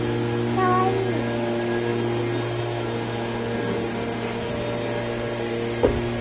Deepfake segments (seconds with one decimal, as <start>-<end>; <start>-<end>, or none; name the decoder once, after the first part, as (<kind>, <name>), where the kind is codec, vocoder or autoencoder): none